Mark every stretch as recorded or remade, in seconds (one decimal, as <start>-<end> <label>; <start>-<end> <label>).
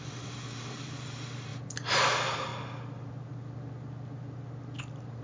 0.0-1.5 remade; 1.5-2.0 recorded; 2.0-2.5 remade; 2.5-4.8 recorded; 4.8-5.2 remade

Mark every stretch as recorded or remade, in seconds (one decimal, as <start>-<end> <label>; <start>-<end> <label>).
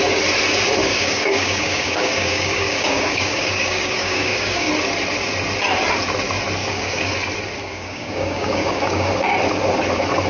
0.0-0.8 recorded; 0.8-4.7 remade; 4.7-6.6 recorded; 6.6-7.1 remade; 7.1-7.6 recorded; 7.6-9.1 remade; 9.1-10.3 recorded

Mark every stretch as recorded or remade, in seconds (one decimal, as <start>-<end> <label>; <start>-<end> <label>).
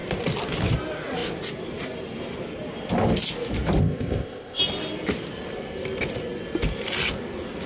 0.0-3.8 recorded; 3.8-4.6 remade; 4.6-7.7 recorded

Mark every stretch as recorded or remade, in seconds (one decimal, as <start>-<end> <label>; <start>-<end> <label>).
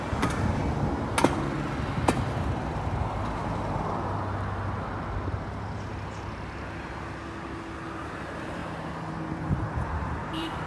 0.0-0.6 remade; 0.6-5.3 recorded; 5.3-5.9 remade; 5.9-8.0 recorded; 8.0-10.7 remade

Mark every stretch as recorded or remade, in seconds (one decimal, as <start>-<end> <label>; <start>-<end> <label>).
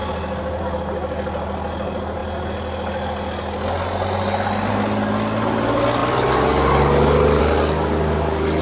0.0-8.6 recorded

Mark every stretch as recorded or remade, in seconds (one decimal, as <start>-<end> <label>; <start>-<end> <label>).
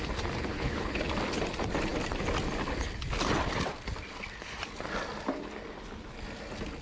0.0-0.4 recorded; 0.4-1.0 remade; 1.0-6.8 recorded